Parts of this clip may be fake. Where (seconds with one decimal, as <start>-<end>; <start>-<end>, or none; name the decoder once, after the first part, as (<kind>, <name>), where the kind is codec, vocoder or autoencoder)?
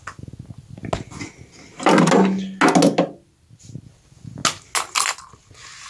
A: none